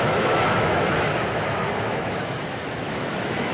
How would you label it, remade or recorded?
remade